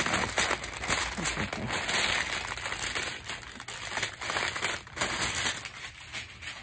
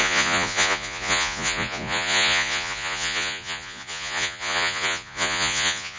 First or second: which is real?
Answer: first